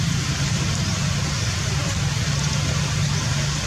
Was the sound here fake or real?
fake